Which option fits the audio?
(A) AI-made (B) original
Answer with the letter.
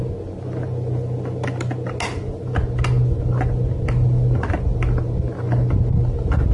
B